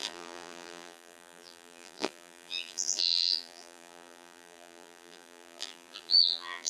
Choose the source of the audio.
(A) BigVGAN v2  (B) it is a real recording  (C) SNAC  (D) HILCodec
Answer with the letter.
A